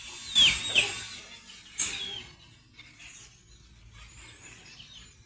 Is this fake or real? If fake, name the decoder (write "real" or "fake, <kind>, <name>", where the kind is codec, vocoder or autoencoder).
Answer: real